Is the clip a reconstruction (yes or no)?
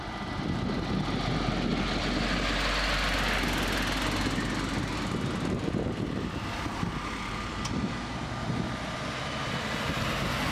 no